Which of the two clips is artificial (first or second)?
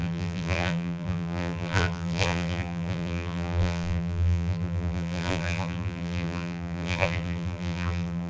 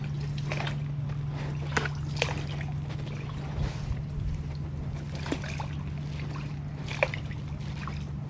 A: first